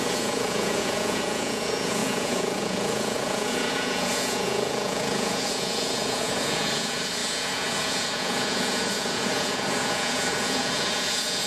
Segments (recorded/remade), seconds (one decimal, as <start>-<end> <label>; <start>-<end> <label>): 0.0-11.5 remade